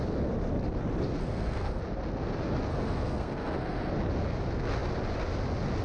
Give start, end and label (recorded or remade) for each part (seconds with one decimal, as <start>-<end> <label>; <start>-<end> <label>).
0.0-1.2 recorded; 1.2-1.8 remade; 1.8-2.7 recorded; 2.7-3.9 remade; 3.9-5.8 recorded